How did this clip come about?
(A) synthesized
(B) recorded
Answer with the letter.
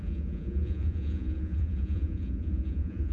A